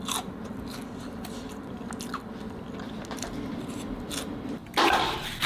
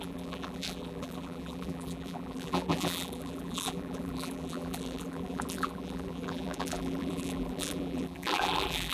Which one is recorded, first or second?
first